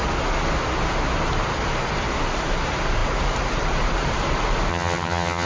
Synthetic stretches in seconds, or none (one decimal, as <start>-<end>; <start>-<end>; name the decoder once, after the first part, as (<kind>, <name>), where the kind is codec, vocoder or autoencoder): 4.7-5.5 (vocoder, HiFi-GAN)